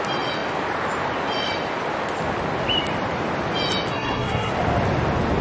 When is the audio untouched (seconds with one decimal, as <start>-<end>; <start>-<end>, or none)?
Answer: 0.0-3.9; 4.5-5.4